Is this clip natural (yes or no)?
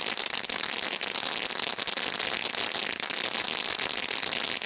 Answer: yes